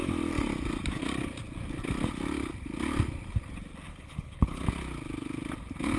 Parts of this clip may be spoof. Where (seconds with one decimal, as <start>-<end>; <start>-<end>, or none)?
3.9-4.6